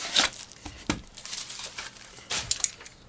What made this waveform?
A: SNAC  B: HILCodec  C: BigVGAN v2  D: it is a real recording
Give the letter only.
C